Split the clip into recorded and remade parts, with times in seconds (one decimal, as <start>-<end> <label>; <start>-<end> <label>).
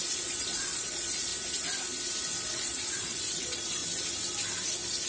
0.0-1.3 remade; 1.3-2.5 recorded; 2.5-3.8 remade; 3.8-5.1 recorded